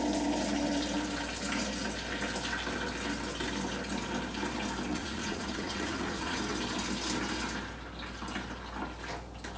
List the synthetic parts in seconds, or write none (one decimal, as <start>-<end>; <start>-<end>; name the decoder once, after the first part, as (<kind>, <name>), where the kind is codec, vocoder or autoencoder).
4.9-6.4 (vocoder, Vocos)